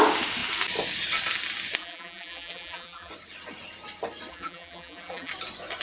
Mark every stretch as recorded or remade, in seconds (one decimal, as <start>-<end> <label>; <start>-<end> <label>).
0.0-1.8 recorded; 1.8-3.1 remade; 3.1-4.3 recorded; 4.3-5.3 remade; 5.3-5.8 recorded